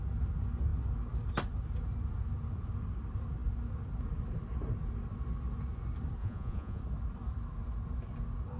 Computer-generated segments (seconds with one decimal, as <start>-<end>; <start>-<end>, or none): 6.2-6.8